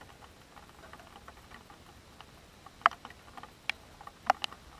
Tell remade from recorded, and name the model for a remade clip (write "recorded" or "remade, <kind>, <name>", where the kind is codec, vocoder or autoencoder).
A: recorded